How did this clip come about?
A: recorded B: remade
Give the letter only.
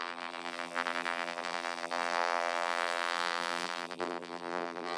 B